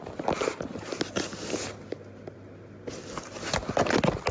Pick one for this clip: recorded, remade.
recorded